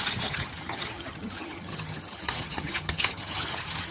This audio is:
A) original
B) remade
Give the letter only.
B